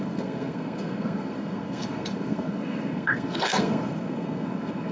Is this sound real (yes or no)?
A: no